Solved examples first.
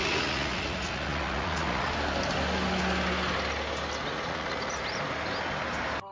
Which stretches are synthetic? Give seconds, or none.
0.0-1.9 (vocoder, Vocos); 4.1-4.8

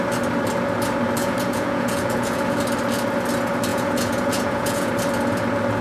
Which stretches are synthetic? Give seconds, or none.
1.2-2.6 (vocoder, Vocos); 3.7-4.9